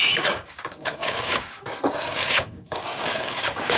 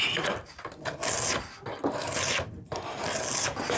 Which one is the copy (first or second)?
first